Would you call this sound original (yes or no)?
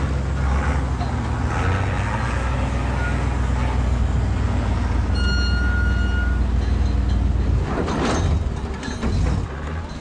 yes